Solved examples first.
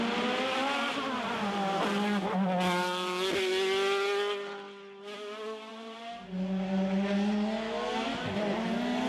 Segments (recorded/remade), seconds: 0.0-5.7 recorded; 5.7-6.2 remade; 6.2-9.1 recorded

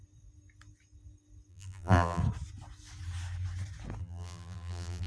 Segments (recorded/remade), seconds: 0.0-1.5 recorded; 1.5-2.2 remade; 2.2-4.0 recorded; 4.0-5.1 remade